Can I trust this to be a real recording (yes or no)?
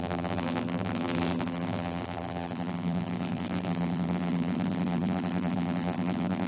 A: no